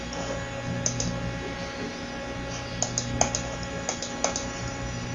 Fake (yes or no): no